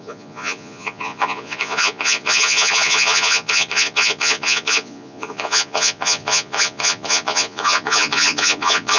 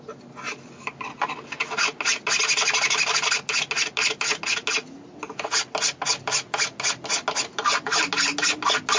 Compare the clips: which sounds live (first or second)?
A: second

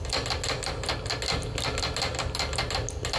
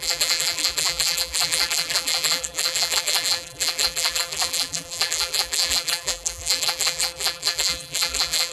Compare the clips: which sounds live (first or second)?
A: first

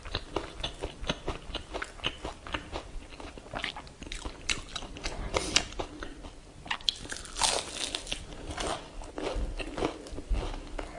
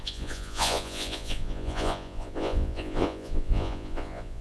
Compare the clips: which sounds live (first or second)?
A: first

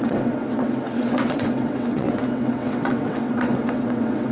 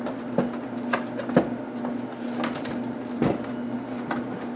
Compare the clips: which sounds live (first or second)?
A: second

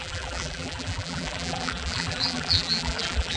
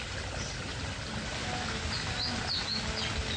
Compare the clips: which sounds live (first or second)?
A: second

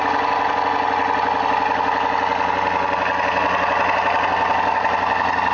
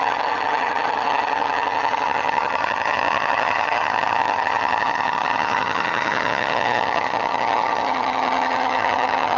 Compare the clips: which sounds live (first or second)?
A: first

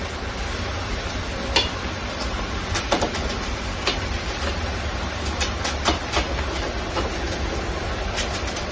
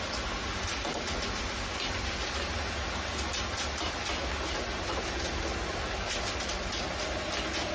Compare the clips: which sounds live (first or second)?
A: second